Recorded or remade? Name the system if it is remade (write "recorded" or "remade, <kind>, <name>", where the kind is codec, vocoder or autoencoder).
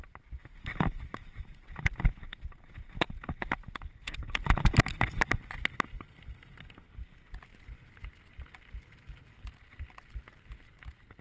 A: recorded